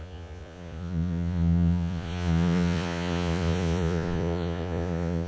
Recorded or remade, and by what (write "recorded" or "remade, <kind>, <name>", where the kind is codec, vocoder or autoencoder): remade, vocoder, Vocos